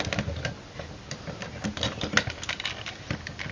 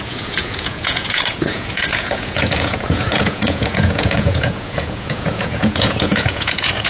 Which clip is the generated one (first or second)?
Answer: second